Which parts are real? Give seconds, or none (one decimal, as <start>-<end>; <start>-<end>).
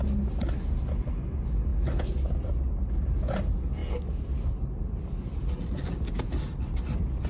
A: 0.0-7.3